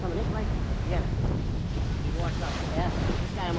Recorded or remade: recorded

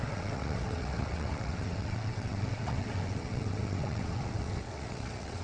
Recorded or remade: remade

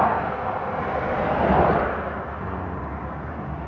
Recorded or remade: recorded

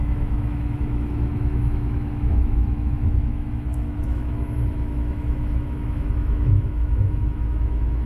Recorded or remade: remade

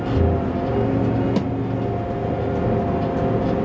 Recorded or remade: recorded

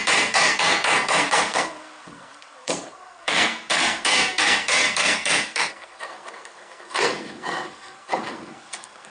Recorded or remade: remade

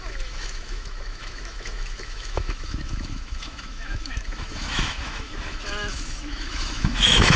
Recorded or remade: remade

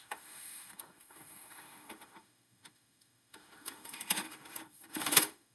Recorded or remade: remade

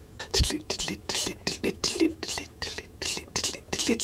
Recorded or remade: remade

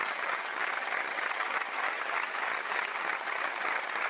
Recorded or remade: remade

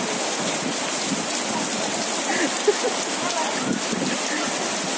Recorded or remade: recorded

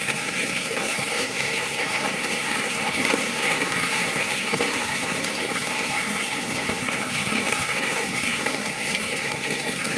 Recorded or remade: remade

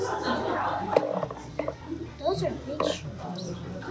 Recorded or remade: recorded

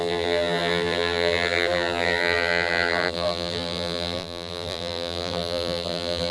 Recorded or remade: remade